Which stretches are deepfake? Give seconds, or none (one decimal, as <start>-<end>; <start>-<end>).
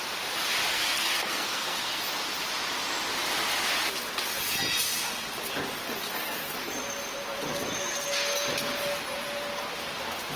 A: 0.7-2.1